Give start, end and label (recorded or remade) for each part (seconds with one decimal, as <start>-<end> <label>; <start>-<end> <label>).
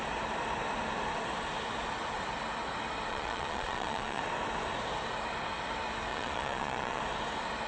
0.0-3.1 recorded; 3.1-4.2 remade; 4.2-6.1 recorded; 6.1-7.0 remade; 7.0-7.7 recorded